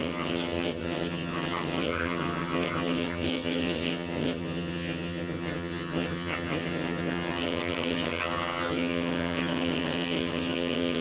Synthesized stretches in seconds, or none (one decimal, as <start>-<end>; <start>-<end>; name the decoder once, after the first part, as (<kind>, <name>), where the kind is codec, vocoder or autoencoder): 0.0-11.0 (vocoder, HiFi-GAN)